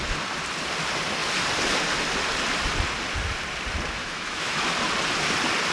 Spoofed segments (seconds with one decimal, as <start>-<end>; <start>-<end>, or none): 4.0-4.7